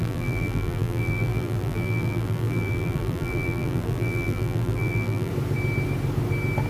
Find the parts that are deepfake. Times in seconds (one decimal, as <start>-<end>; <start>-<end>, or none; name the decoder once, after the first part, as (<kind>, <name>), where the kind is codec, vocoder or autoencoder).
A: 0.0-5.3 (vocoder, BigVGAN v2)